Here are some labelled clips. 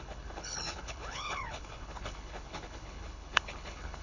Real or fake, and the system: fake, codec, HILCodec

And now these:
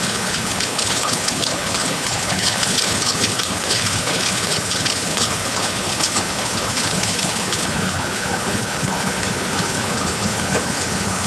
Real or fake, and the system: fake, codec, HILCodec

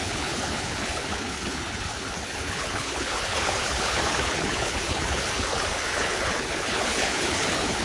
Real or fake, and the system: fake, codec, HILCodec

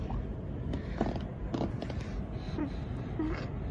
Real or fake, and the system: real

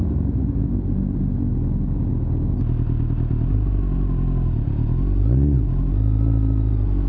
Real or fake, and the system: real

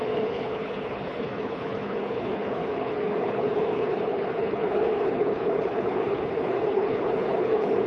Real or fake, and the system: fake, codec, HILCodec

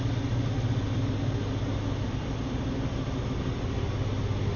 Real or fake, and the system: real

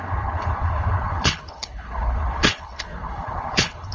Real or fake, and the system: fake, codec, HILCodec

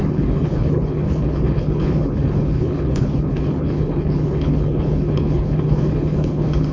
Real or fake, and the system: fake, codec, HILCodec